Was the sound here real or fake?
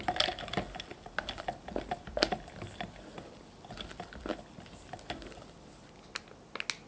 real